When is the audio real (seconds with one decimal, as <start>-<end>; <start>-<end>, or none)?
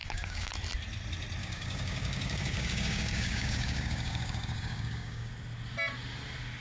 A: 0.5-1.4; 5.3-6.6